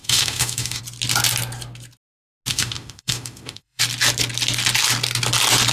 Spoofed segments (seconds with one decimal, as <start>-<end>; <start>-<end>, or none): 0.0-0.8; 2.5-3.8

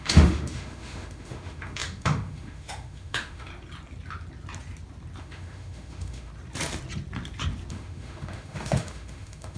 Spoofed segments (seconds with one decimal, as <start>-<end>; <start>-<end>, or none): 0.0-3.5; 5.2-6.3; 7.7-9.6

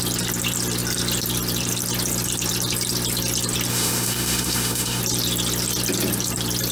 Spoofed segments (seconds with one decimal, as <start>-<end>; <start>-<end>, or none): 3.7-5.0

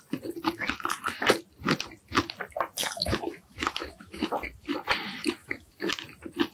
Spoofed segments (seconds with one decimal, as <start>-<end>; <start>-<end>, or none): 2.8-4.3; 5.4-5.9

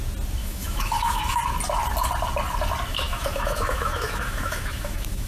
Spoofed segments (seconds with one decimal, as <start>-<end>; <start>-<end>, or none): 0.4-1.4; 2.9-5.3

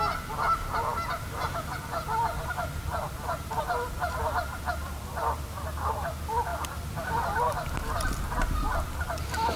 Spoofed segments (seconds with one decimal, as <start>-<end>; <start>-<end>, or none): none